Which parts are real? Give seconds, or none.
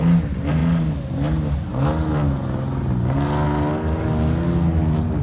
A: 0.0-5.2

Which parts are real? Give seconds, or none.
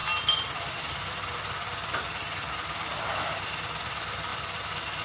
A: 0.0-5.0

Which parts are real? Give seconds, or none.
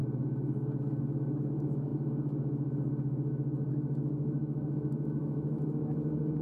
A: 0.0-1.0; 1.9-3.7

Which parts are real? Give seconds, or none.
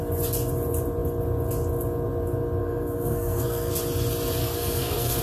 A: 0.0-2.6; 3.7-4.4